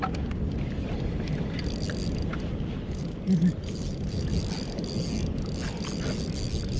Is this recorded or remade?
recorded